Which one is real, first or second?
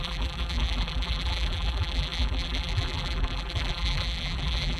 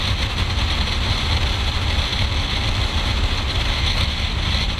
second